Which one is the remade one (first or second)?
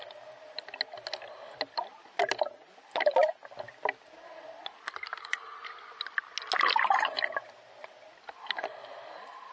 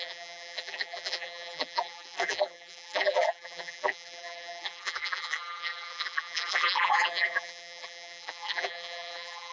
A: second